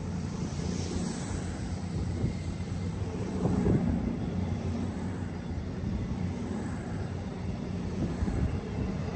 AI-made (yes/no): yes